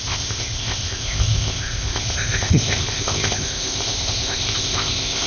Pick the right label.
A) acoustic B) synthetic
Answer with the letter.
B